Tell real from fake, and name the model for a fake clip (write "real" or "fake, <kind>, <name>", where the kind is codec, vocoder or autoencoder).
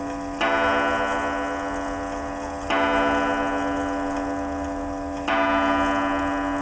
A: real